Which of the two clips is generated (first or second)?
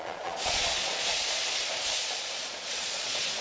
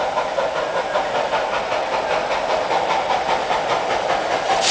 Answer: first